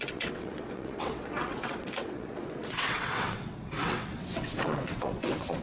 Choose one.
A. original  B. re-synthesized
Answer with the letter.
B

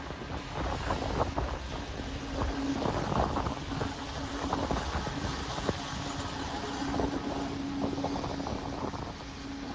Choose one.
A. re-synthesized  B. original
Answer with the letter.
B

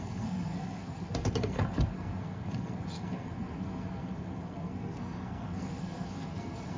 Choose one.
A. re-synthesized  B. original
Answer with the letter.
A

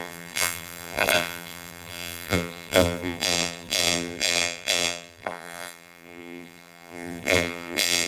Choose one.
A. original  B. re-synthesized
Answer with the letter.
B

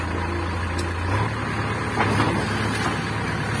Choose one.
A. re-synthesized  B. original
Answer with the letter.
B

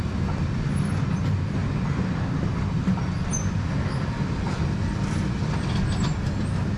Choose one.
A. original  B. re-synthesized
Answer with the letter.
A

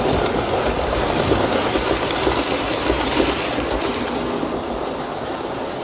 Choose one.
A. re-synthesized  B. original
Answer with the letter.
B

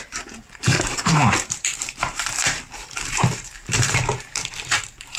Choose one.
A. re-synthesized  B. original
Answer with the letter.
A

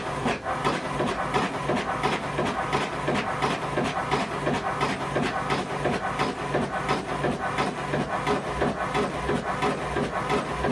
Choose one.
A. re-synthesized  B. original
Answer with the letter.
B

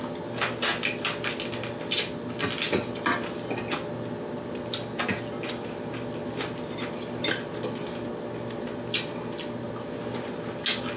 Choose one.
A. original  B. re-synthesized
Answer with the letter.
A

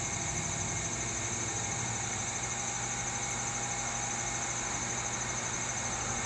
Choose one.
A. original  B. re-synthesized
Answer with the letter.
A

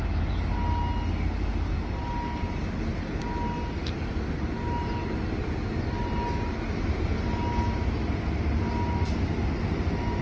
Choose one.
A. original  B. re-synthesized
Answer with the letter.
A